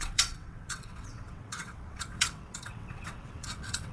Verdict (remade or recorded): remade